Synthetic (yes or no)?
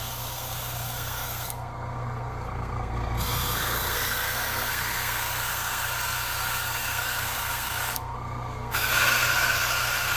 yes